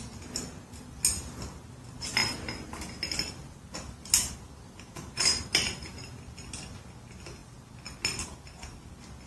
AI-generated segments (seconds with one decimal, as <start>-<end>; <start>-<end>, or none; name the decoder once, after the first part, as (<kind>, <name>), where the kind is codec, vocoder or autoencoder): none